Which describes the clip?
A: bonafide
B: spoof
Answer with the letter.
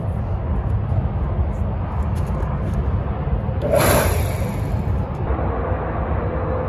A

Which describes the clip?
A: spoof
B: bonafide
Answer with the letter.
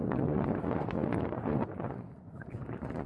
A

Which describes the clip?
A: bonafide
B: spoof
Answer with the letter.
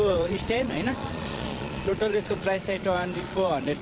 B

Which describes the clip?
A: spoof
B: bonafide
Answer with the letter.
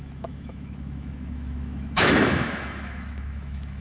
A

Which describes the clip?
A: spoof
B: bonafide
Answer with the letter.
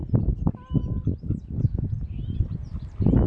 B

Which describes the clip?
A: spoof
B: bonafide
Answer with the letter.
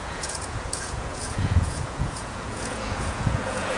A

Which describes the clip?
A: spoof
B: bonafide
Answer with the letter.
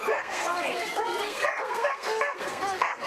A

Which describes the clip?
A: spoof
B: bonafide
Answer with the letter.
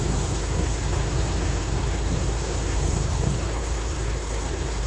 A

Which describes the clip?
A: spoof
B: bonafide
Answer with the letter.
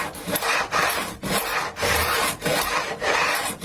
B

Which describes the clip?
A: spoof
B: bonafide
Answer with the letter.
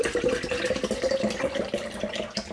A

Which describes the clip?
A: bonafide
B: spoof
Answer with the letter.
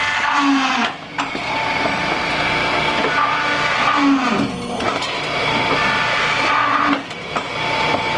A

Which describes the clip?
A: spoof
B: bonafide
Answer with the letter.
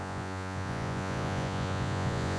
A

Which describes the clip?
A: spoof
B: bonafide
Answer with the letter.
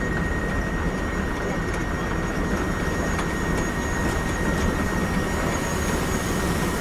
B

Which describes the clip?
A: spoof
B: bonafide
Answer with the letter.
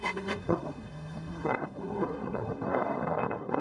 A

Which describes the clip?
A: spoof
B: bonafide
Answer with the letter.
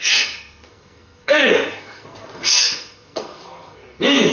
A